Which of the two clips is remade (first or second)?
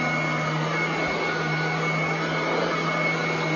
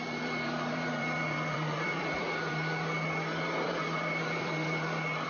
second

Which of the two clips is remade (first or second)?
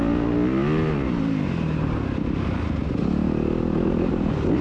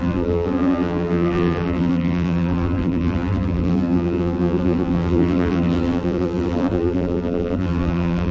second